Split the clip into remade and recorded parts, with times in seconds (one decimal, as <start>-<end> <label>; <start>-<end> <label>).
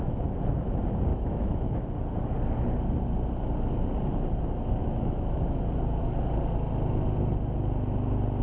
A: 0.0-1.1 recorded; 1.1-1.7 remade; 1.7-4.8 recorded; 4.8-5.6 remade; 5.6-8.4 recorded